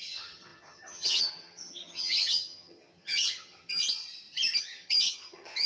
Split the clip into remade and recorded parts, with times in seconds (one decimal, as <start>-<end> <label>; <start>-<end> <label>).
0.0-3.8 remade; 3.8-4.6 recorded; 4.6-5.7 remade